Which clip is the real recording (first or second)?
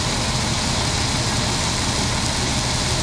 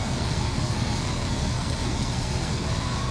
first